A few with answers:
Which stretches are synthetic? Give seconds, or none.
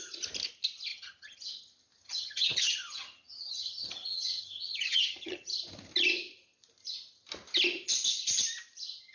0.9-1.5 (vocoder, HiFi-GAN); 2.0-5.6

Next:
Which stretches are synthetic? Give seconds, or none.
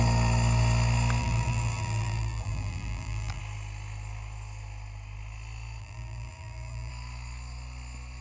1.2-3.4 (vocoder, BigVGAN v2); 5.8-6.9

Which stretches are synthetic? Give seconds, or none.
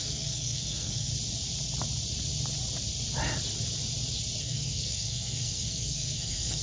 0.0-1.1 (codec, SNAC); 4.4-6.6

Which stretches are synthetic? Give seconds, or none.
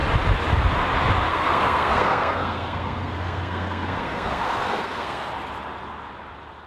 1.3-5.3 (codec, SNAC)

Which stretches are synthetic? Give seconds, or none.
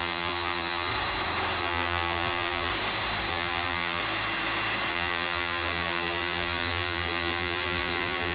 0.0-0.9 (vocoder, BigVGAN v2); 1.6-2.7; 3.3-4.0; 4.9-8.3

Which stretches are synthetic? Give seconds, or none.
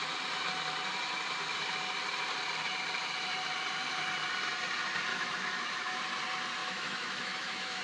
5.1-6.0 (autoencoder, DAC-VAE); 6.6-7.8